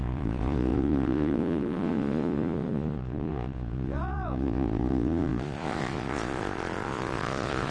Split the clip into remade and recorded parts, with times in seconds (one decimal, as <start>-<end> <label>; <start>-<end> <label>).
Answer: 0.0-7.7 remade